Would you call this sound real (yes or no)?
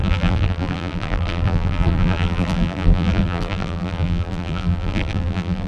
no